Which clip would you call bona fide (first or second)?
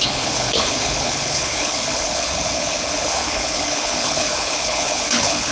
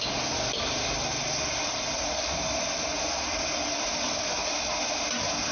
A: second